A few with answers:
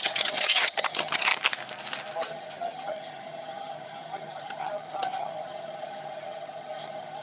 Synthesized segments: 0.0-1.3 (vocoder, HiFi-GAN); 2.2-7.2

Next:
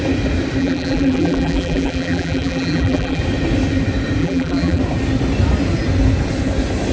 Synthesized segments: 0.6-3.2 (vocoder, BigVGAN v2); 4.2-4.8

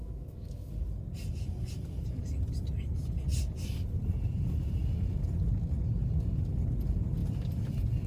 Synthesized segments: 0.0-0.7 (autoencoder, DAC-VAE)

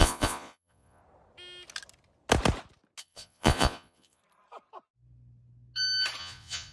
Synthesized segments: 0.0-1.0 (vocoder, Vocos); 3.0-4.2; 6.2-6.7

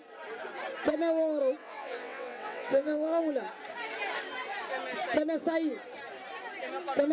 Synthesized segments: 1.6-3.2 (vocoder, WaveNeXt)

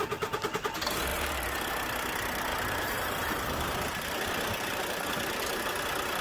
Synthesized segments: 1.1-1.7 (vocoder, BigVGAN v2); 2.5-5.6

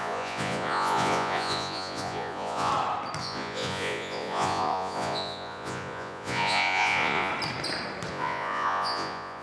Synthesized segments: 0.0-2.7 (vocoder, Vocos); 3.2-7.3; 8.1-9.4

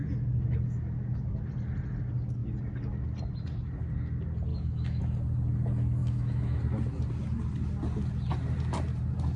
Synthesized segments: 4.5-5.0 (autoencoder, DAC-VAE); 6.0-6.6